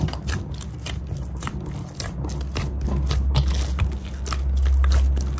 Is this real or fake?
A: real